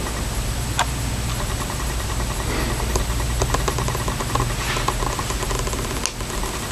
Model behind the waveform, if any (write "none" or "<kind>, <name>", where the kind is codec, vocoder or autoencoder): none